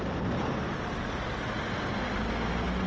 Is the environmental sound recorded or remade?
recorded